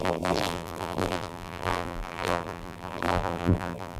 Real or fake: fake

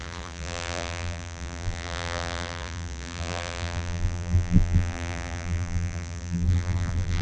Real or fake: fake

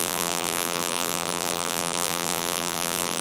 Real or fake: fake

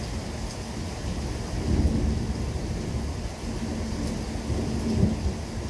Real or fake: real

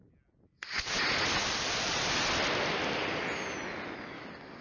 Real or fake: real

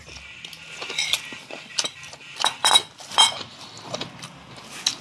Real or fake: real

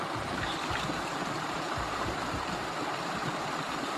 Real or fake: fake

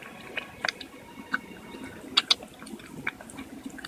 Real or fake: real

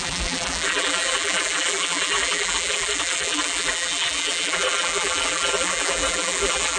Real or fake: fake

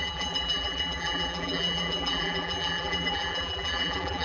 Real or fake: fake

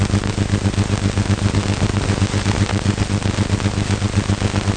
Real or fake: real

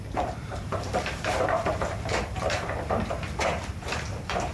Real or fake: fake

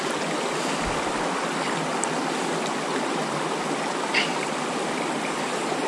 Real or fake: real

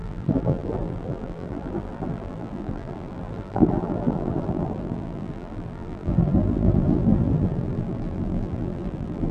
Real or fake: fake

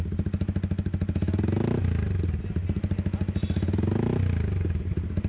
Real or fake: real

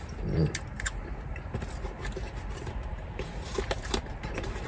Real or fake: fake